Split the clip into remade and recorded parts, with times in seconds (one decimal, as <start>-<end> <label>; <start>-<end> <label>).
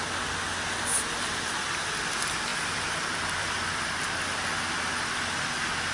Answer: 0.0-2.5 recorded; 2.5-4.4 remade; 4.4-5.9 recorded